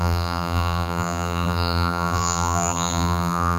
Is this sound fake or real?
fake